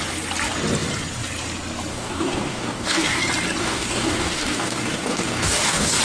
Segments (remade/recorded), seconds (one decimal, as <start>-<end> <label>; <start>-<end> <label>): 0.0-1.9 recorded; 1.9-3.2 remade; 3.2-3.6 recorded; 3.6-6.0 remade